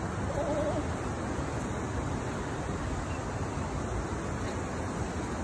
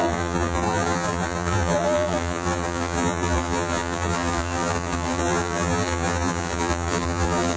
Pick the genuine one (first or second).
first